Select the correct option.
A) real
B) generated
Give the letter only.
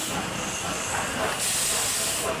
A